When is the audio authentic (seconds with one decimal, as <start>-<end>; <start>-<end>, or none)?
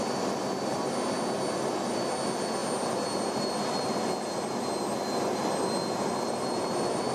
0.0-7.1